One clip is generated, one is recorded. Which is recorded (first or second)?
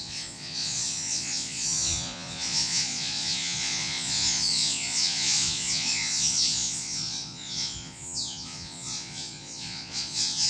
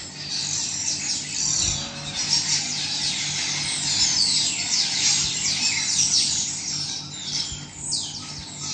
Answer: second